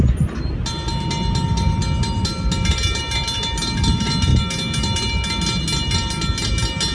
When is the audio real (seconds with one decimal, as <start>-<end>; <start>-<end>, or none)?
0.0-6.9